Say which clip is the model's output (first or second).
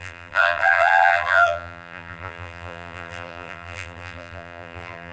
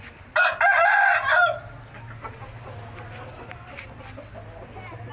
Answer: first